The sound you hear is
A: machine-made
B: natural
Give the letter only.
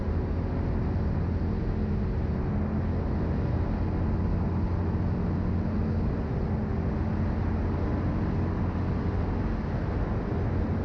B